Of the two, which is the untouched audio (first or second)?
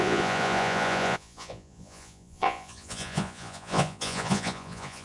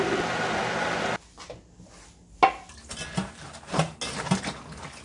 second